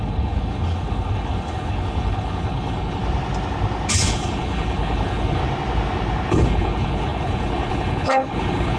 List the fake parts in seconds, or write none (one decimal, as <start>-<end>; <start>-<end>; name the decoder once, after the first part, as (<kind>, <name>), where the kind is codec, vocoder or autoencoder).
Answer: 0.0-3.0 (codec, HILCodec); 3.9-5.4; 6.3-8.8

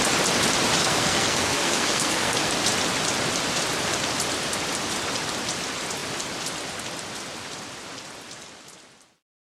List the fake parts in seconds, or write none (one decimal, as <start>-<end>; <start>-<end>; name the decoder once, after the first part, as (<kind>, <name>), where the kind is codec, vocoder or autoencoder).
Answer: 0.8-2.5 (codec, SNAC)

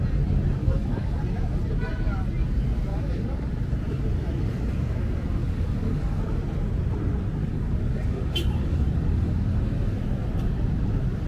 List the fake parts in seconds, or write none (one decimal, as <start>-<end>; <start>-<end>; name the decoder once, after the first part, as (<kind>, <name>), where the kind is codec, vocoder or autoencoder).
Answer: 0.6-1.2 (codec, DAC); 2.9-3.5; 5.4-6.2; 7.5-10.0

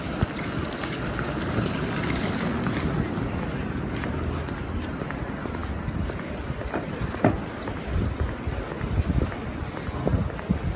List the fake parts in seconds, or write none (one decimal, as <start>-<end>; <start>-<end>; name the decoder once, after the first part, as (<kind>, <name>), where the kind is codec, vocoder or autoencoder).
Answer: none

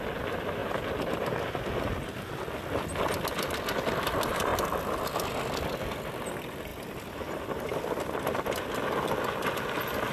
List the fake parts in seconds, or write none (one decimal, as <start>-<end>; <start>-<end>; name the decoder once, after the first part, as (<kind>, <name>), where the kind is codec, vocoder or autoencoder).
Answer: none

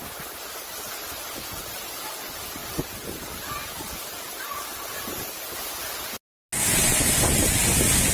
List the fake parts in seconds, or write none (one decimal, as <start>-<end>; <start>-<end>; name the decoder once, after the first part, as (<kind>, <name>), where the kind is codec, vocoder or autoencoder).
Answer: none

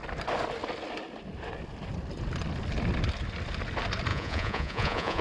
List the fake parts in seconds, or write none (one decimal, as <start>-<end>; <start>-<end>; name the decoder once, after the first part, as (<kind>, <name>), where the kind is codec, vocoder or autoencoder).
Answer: 4.1-5.2 (vocoder, Vocos)